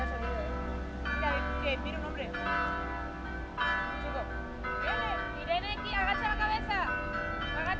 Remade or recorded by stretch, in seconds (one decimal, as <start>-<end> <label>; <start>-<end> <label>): 0.0-7.8 recorded